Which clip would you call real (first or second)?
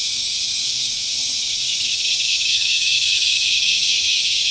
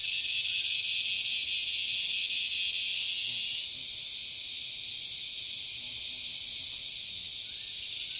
second